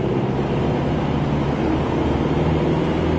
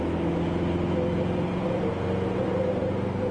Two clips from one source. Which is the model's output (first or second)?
first